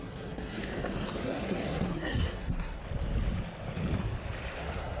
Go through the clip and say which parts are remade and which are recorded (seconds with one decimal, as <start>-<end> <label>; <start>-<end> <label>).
0.0-0.6 remade; 0.6-1.2 recorded; 1.2-2.8 remade; 2.8-4.6 recorded; 4.6-5.0 remade

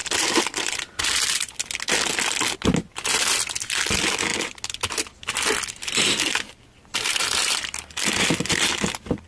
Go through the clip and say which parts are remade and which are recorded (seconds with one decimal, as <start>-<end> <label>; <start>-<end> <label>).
0.0-1.0 remade; 1.0-9.3 recorded

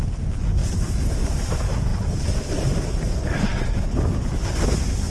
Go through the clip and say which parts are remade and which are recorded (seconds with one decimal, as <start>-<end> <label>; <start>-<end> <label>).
0.0-5.1 recorded